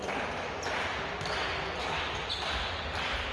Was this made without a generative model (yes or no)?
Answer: yes